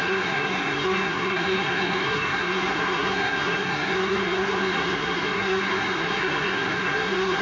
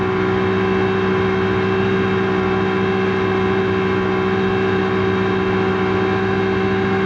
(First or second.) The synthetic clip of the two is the first